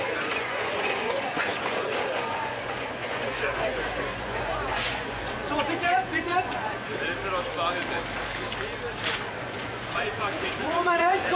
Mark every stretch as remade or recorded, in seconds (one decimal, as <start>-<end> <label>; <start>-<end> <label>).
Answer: 0.0-6.9 remade; 6.9-9.4 recorded; 9.4-11.4 remade